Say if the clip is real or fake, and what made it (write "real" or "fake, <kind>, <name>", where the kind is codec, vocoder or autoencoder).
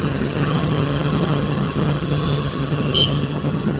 fake, vocoder, HiFi-GAN